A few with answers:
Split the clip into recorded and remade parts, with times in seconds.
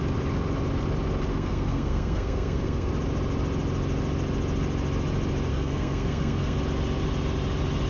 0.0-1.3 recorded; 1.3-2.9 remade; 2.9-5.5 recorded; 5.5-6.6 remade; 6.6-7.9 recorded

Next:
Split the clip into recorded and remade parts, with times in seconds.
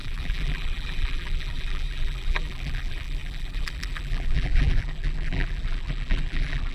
0.0-6.7 remade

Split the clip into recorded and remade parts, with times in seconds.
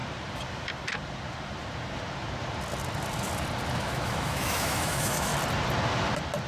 0.0-3.7 recorded; 3.7-5.3 remade; 5.3-6.5 recorded